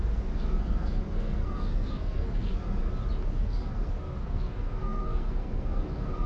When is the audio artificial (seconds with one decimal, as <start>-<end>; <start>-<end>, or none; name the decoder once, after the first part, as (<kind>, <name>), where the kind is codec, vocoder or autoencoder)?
0.0-2.8 (codec, SNAC); 3.4-6.3